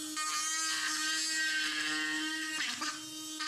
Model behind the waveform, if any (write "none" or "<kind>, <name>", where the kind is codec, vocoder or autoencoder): none